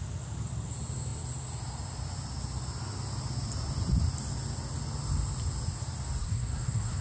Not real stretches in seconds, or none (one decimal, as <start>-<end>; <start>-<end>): 6.2-7.0

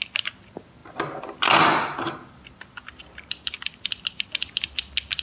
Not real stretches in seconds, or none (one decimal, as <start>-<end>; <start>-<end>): none

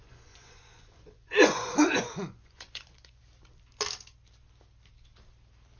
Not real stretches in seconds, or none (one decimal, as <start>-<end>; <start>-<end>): 0.0-3.2

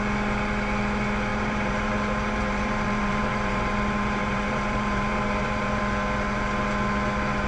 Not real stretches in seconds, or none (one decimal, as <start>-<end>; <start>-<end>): 1.3-5.8

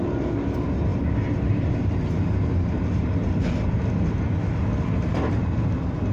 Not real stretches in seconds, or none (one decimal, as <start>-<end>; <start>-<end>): none

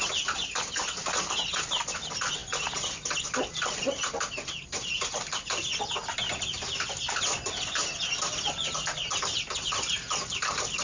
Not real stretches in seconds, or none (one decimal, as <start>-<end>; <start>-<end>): none

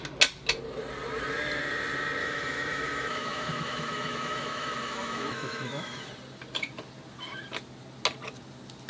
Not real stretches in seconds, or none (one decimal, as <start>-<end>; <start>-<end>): 2.2-6.1

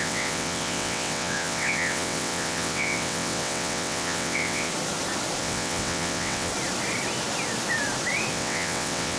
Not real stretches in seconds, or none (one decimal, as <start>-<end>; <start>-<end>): 0.0-4.7; 5.4-6.5; 8.3-9.2